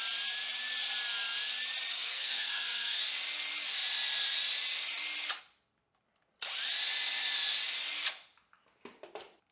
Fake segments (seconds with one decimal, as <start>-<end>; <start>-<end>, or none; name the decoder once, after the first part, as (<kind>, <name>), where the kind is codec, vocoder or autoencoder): 1.9-3.0 (codec, SNAC)